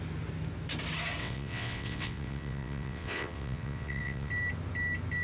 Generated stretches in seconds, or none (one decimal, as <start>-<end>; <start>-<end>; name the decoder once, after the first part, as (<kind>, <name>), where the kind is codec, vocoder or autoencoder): 1.2-4.3 (vocoder, WaveNeXt)